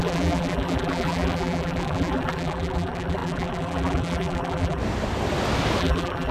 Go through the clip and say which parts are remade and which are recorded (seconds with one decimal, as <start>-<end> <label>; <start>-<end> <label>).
0.0-4.8 remade; 4.8-5.8 recorded; 5.8-6.3 remade